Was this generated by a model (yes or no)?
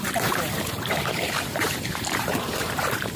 yes